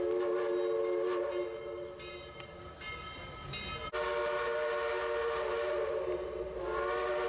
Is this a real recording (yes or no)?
yes